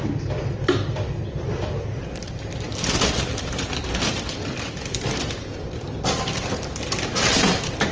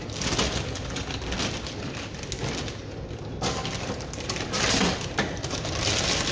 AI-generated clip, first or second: first